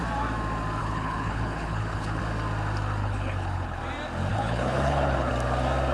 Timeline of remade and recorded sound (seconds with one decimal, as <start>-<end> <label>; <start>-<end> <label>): 0.0-0.8 recorded; 0.8-2.2 remade; 2.2-3.0 recorded; 3.0-3.8 remade; 3.8-4.3 recorded; 4.3-5.3 remade; 5.3-5.9 recorded